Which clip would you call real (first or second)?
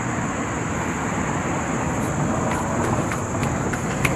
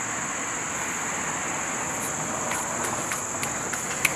second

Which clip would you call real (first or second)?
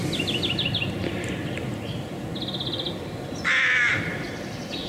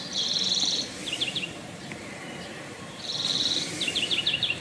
first